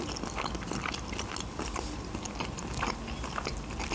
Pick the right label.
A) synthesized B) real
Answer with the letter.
B